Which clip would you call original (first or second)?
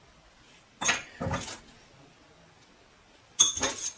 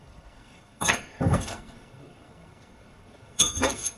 first